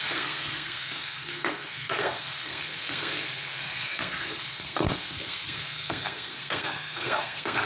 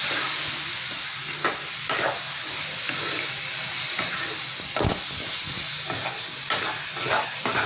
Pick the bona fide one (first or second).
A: second